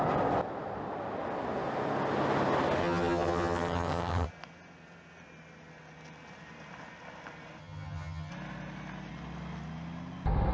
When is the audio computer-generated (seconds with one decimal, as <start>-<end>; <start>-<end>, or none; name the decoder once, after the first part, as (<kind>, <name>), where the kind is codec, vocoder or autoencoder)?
2.8-4.3 (vocoder, HiFi-GAN); 7.6-8.3